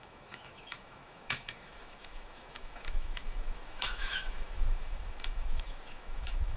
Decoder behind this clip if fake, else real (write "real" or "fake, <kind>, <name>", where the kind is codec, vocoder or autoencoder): fake, autoencoder, DAC-VAE